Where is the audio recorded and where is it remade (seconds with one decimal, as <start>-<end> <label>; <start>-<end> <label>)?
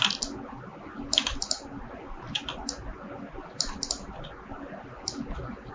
0.0-5.7 recorded